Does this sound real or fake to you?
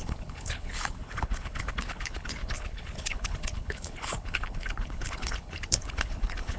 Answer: fake